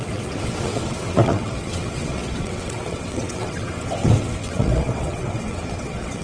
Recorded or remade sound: remade